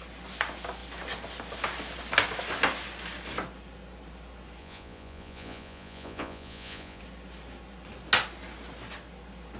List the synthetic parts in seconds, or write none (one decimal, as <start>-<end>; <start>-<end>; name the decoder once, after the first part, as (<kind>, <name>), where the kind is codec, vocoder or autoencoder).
4.6-7.0 (vocoder, Vocos)